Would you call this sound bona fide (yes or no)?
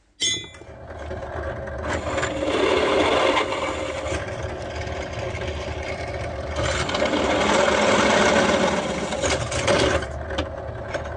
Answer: yes